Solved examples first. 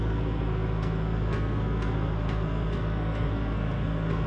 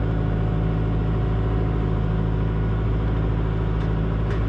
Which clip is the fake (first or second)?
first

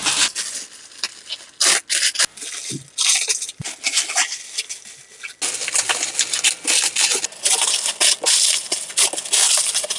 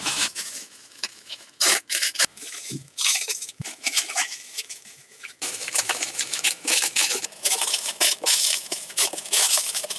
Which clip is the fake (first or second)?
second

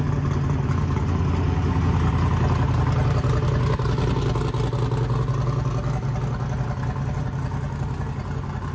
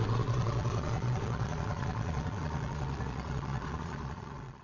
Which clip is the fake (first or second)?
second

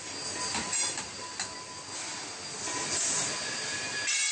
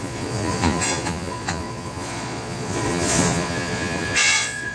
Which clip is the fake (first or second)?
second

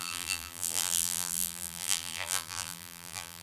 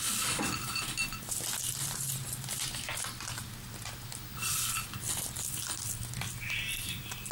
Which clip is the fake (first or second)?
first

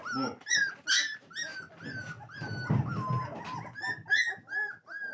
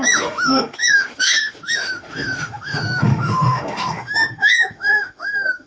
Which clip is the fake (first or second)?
second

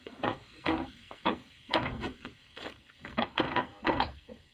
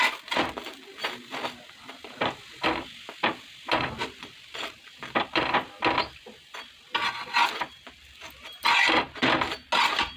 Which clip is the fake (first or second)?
first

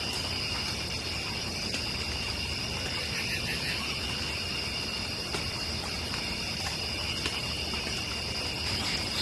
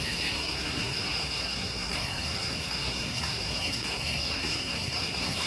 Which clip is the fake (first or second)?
second